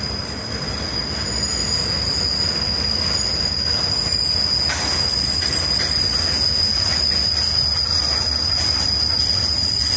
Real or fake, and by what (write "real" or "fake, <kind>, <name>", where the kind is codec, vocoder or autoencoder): real